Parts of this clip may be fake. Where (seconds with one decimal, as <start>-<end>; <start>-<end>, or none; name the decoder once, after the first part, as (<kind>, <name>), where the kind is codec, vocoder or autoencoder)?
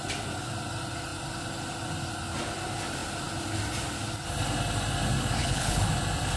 5.4-5.9 (codec, HILCodec)